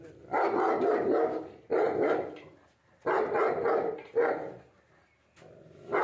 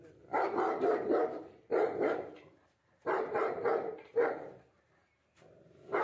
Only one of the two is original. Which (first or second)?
first